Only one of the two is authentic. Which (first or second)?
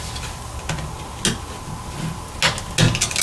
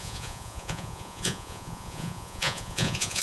first